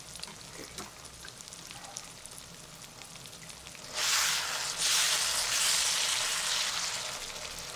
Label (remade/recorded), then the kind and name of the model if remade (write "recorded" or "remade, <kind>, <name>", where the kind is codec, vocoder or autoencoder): recorded